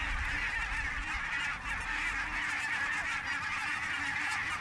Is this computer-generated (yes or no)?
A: no